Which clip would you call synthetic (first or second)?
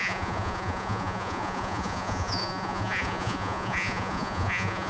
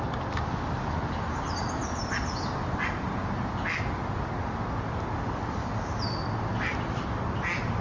first